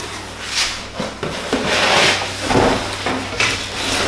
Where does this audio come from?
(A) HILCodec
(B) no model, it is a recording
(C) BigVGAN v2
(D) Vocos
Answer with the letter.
B